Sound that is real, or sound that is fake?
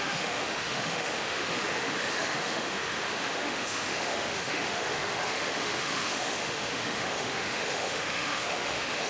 fake